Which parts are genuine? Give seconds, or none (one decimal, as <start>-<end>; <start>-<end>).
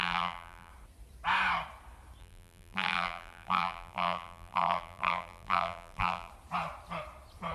0.7-2.2; 6.3-7.5